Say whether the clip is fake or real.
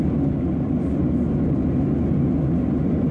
real